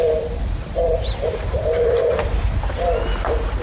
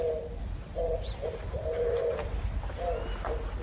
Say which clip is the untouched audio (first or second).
second